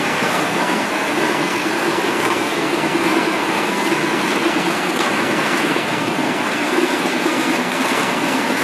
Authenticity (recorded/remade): remade